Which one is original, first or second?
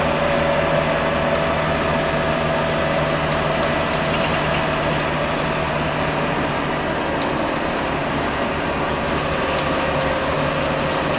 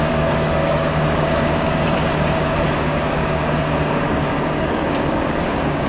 first